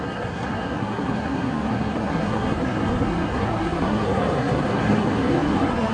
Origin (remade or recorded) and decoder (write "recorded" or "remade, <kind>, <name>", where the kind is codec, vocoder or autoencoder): remade, codec, SNAC